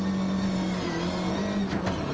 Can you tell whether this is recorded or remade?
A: recorded